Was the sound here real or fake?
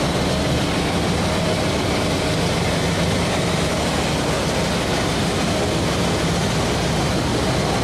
real